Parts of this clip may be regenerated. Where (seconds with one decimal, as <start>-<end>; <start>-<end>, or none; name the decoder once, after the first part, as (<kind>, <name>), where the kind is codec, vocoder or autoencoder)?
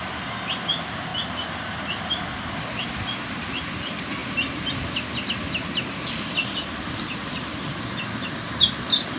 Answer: 0.0-1.1 (vocoder, BigVGAN v2); 3.2-4.2; 6.1-9.2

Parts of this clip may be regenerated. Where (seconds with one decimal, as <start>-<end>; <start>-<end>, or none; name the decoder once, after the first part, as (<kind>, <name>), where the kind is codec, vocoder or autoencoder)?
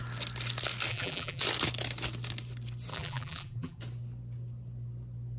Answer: 0.9-1.4 (vocoder, BigVGAN v2); 2.9-3.8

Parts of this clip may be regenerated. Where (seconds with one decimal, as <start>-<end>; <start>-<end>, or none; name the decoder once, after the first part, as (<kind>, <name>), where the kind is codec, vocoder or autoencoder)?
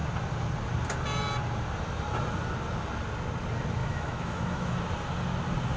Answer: 3.8-4.8 (autoencoder, DAC-VAE)